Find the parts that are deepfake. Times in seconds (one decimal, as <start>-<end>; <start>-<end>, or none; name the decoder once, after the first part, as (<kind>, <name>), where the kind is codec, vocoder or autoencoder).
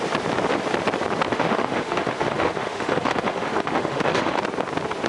1.3-4.4 (autoencoder, DAC-VAE)